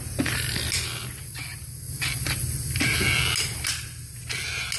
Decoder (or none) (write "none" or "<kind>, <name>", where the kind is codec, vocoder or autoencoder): none